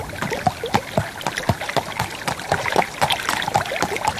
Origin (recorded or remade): recorded